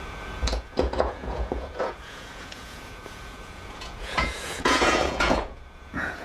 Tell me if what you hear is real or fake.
fake